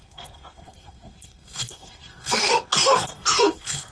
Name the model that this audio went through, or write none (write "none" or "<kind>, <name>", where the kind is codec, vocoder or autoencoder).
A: codec, SNAC